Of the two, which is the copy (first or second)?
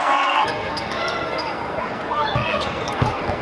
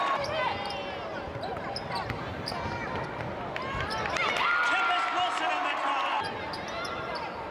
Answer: first